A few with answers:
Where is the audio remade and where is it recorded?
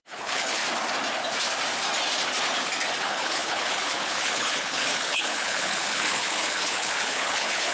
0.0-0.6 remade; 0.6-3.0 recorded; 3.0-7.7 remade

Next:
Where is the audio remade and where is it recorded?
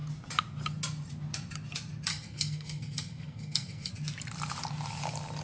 0.0-2.1 recorded; 2.1-3.9 remade; 3.9-5.4 recorded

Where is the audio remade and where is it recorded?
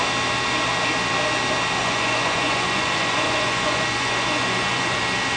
0.0-1.8 recorded; 1.8-5.0 remade; 5.0-5.4 recorded